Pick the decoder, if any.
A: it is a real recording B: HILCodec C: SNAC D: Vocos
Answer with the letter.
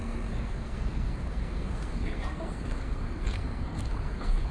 C